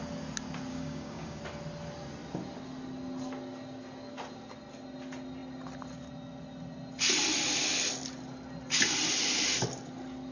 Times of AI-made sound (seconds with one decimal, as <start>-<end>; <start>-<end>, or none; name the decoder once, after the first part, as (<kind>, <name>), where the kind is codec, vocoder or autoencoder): 0.7-1.4 (codec, DAC)